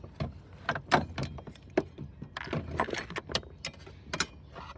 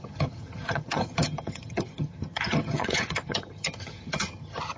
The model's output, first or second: second